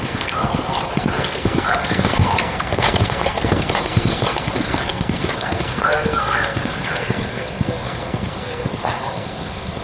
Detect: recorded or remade remade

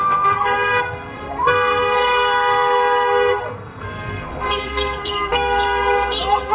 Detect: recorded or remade remade